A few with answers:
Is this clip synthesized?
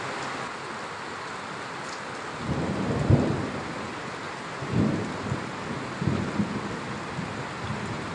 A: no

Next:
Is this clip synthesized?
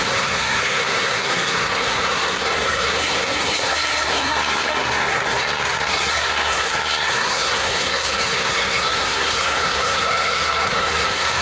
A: yes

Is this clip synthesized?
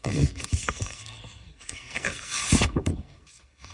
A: yes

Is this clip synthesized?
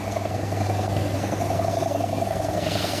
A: yes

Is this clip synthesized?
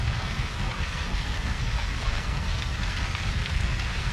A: yes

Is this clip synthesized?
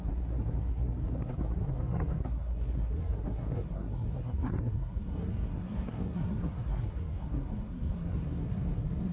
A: yes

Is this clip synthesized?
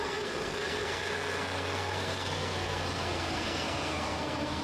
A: yes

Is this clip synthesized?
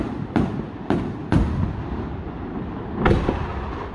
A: no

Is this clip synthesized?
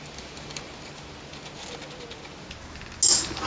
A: no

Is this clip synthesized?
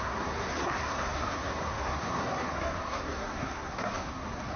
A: yes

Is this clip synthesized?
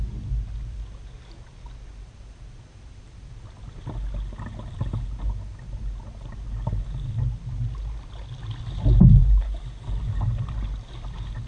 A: no